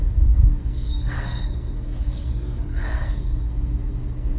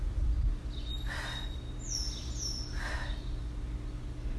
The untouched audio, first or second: second